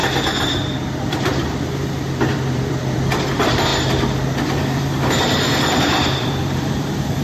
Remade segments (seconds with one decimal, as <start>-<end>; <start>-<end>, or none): 0.9-3.7; 4.7-7.2